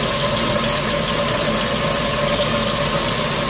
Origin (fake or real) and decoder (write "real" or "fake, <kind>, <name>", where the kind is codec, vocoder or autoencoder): real